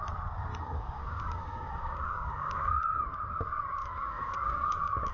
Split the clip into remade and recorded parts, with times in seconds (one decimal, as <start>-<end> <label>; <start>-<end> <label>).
0.0-0.5 recorded; 0.5-2.7 remade; 2.7-3.8 recorded; 3.8-5.1 remade